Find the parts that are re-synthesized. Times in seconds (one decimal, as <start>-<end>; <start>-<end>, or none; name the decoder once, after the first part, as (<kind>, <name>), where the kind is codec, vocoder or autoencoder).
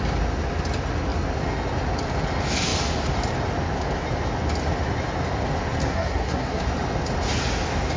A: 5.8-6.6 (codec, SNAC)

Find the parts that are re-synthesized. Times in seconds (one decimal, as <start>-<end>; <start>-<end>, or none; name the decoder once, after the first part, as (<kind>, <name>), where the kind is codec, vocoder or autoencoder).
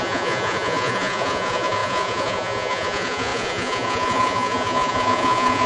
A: 0.0-5.7 (vocoder, Vocos)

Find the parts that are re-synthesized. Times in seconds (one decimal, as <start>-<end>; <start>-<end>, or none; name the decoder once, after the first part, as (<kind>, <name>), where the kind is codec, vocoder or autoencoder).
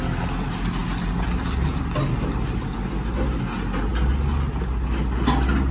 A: none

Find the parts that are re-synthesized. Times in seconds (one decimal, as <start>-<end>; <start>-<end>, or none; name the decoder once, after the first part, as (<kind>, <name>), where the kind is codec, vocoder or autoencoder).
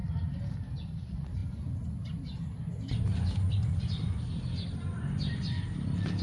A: none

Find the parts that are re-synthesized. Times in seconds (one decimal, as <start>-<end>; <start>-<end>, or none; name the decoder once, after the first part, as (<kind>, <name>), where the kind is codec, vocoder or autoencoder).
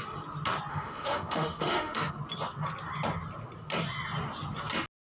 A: 0.7-2.1 (autoencoder, DAC-VAE)